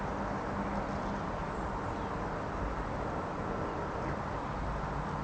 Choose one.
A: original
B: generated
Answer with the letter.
A